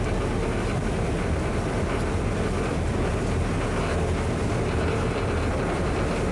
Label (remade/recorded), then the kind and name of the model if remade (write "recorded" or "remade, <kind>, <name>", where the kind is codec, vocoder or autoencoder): recorded